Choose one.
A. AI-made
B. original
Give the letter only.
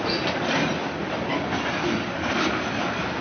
B